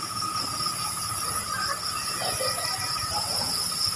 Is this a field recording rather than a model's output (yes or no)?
no